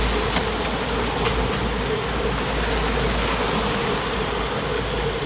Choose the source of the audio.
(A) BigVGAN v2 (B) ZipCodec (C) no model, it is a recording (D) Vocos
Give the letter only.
C